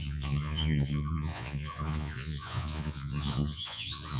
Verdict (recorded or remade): remade